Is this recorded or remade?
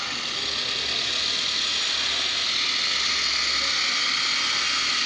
recorded